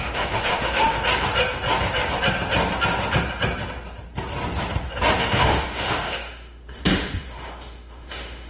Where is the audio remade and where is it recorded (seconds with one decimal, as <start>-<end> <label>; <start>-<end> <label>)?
0.0-1.0 remade; 1.0-5.2 recorded; 5.2-8.5 remade